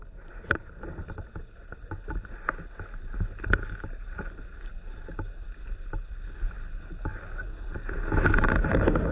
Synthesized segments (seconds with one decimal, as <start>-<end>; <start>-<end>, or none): 0.0-1.4